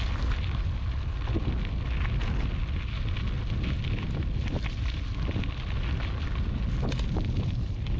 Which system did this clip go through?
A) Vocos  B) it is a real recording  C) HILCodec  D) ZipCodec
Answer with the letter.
B